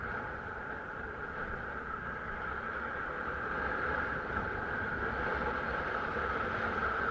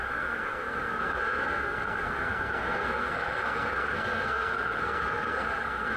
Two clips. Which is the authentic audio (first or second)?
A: first